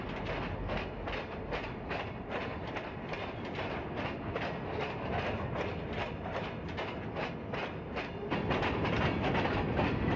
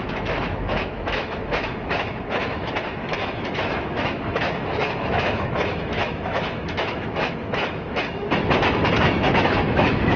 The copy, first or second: second